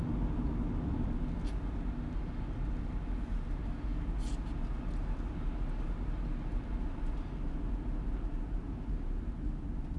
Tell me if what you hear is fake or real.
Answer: real